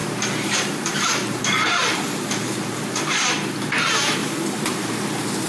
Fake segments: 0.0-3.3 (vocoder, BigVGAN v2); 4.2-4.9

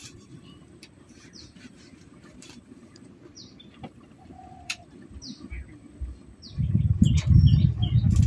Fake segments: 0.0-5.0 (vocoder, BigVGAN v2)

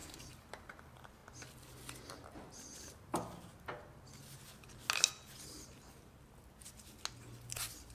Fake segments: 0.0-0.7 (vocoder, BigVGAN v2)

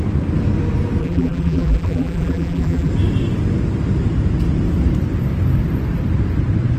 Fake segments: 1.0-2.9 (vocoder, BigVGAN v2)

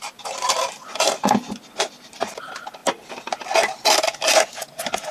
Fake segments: none

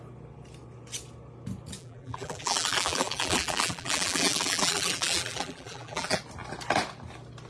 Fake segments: 1.8-6.2 (vocoder, BigVGAN v2)